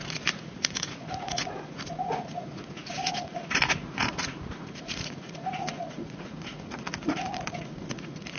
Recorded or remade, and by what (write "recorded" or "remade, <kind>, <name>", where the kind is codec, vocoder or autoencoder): remade, vocoder, Vocos